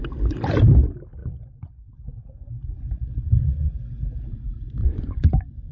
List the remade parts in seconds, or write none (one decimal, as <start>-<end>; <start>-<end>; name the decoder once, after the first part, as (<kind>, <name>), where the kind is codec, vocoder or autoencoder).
1.2-3.7 (vocoder, Vocos); 4.8-5.7